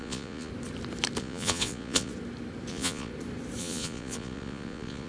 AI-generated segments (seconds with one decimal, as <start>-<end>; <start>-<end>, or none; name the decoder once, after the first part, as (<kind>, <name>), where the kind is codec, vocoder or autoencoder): 0.0-0.5 (vocoder, Vocos); 1.2-2.1; 2.7-3.1; 3.6-5.1

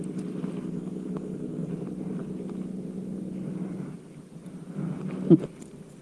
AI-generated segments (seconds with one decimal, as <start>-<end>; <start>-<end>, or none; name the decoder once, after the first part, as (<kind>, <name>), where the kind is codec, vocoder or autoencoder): 0.6-1.7 (codec, SNAC)

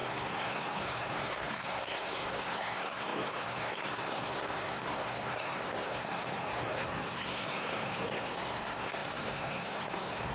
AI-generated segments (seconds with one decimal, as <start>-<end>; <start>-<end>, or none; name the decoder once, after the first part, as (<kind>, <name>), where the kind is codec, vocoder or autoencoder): 0.0-10.3 (codec, SNAC)

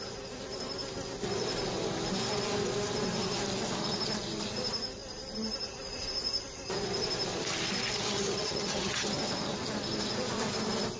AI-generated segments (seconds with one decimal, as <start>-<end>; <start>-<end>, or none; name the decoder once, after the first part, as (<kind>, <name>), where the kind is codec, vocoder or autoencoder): 8.0-9.2 (vocoder, HiFi-GAN)

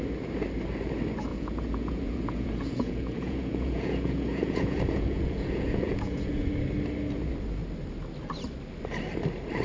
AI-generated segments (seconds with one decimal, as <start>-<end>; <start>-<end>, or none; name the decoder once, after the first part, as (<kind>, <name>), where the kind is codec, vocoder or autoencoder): 1.3-6.5 (vocoder, Vocos)

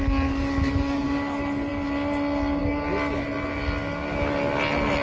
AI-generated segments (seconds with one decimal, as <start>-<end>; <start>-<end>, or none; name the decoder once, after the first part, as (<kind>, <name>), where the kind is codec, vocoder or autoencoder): none